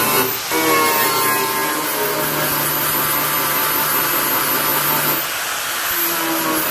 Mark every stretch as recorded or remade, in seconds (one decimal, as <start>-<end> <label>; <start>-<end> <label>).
0.0-6.7 recorded